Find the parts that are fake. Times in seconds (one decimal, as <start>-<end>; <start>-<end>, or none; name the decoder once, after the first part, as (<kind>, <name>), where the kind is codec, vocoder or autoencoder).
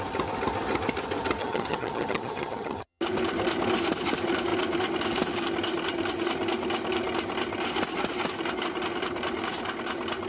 1.4-3.0 (vocoder, HiFi-GAN)